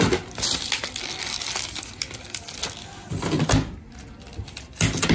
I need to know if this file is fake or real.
real